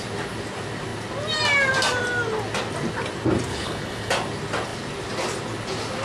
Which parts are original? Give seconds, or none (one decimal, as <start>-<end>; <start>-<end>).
0.0-3.5; 4.1-6.0